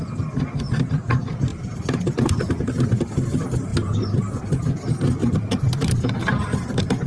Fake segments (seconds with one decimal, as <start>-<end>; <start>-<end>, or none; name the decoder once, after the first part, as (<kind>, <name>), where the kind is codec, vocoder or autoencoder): 1.5-2.6 (vocoder, BigVGAN v2); 3.7-4.5; 5.2-5.8